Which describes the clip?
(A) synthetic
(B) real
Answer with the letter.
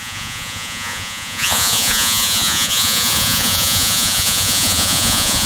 A